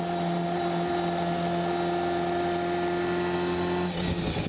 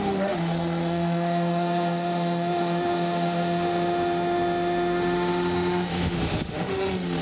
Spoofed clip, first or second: second